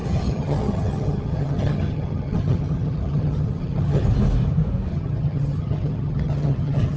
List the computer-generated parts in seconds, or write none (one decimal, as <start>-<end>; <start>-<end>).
0.0-4.0; 4.9-7.0